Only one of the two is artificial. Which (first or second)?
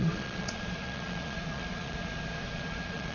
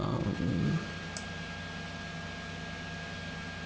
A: first